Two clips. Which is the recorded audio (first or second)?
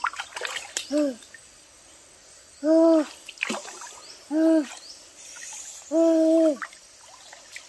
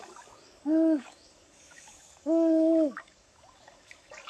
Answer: first